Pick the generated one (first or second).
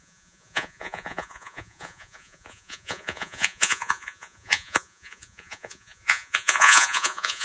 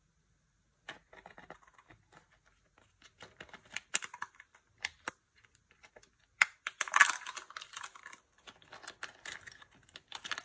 first